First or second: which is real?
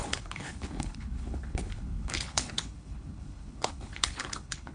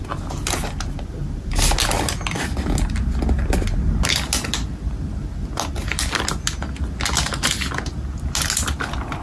second